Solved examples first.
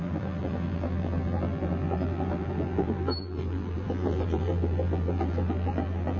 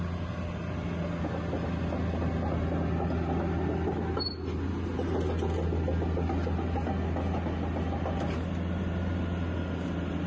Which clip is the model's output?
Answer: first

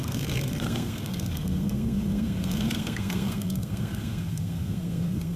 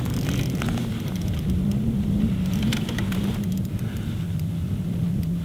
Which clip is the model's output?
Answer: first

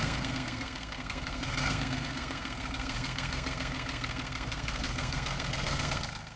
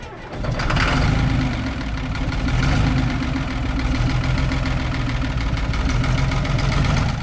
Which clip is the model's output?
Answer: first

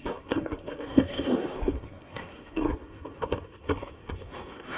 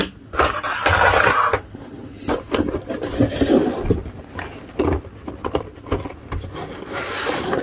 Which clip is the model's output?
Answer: first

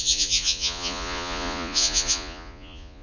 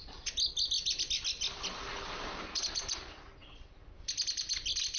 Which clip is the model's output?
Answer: first